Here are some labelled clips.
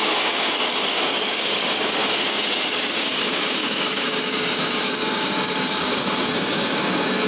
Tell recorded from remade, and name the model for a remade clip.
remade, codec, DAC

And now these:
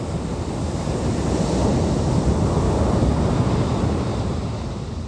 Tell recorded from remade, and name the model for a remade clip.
recorded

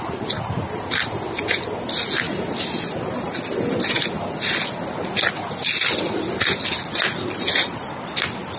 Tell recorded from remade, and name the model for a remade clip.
recorded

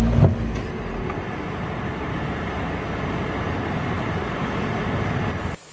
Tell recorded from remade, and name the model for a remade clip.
recorded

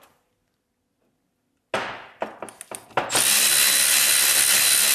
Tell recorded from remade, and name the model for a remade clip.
recorded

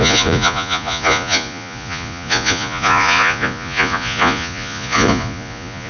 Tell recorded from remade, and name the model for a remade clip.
remade, vocoder, Vocos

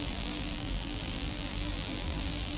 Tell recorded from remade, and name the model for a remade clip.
remade, vocoder, BigVGAN v2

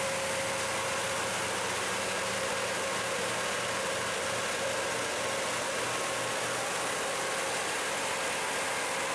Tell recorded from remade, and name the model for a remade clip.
recorded